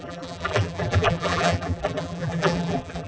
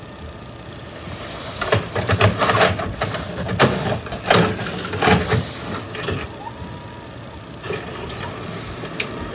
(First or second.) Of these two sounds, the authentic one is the second